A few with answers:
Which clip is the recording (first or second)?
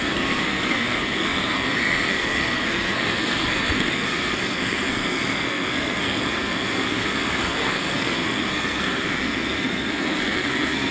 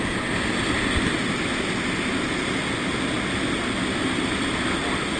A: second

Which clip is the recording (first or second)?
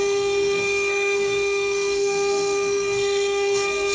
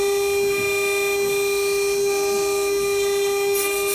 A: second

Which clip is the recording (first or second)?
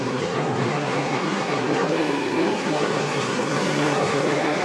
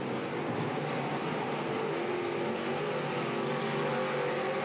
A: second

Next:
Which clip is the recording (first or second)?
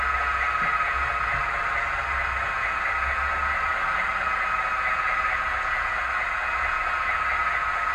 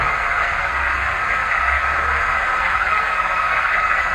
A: first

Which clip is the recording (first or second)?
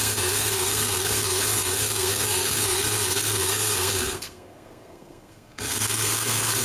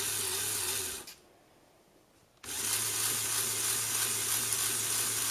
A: second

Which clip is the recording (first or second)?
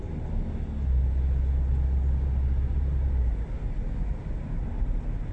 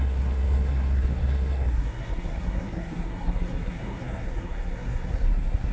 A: first